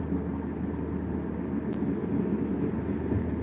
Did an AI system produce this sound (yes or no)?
no